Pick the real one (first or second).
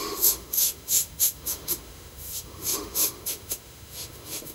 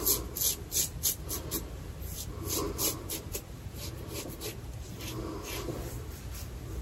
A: second